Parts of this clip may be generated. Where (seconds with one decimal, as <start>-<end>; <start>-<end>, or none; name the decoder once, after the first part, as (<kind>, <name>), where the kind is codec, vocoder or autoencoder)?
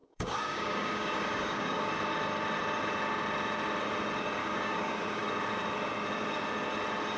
0.0-1.9 (codec, DAC); 4.4-5.3